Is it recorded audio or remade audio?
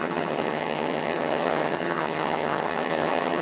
remade